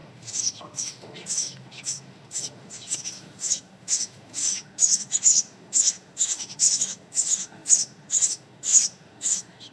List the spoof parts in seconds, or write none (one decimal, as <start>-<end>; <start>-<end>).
0.0-9.7